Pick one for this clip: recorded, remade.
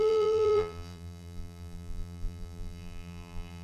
remade